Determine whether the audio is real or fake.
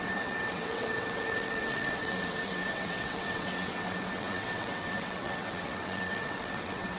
fake